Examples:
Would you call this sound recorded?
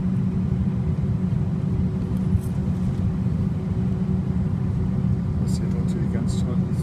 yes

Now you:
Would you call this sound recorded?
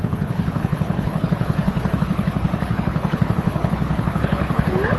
no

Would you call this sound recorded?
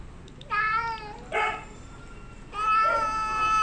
yes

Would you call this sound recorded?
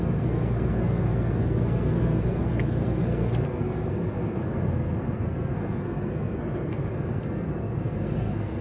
no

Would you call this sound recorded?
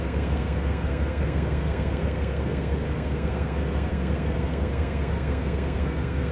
no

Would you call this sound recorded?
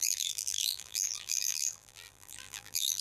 no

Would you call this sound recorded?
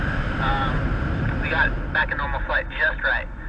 yes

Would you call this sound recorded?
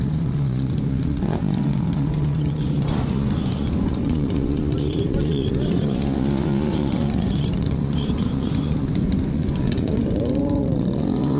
no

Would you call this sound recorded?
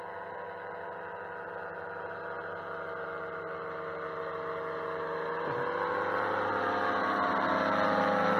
yes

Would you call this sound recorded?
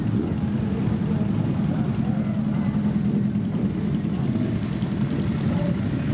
yes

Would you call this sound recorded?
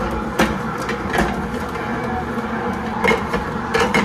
yes